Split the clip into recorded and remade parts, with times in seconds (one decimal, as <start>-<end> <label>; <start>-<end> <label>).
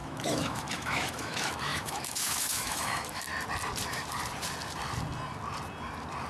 0.0-3.3 remade; 3.3-6.3 recorded